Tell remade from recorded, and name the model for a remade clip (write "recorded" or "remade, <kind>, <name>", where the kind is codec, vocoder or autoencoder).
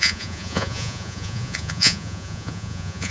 remade, vocoder, Vocos